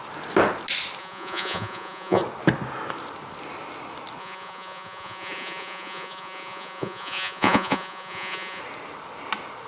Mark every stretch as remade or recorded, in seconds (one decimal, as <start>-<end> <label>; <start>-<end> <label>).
0.0-1.0 recorded; 1.0-2.2 remade; 2.2-4.2 recorded; 4.2-8.6 remade; 8.6-9.7 recorded